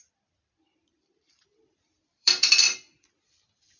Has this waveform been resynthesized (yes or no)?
yes